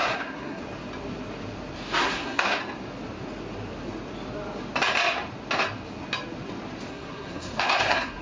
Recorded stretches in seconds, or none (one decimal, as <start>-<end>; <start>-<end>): 0.6-2.0; 2.6-6.9